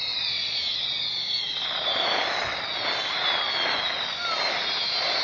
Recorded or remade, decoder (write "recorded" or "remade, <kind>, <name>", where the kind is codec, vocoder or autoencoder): recorded